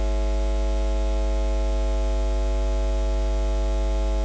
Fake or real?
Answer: real